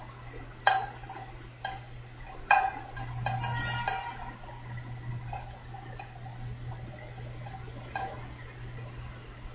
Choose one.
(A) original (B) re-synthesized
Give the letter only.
A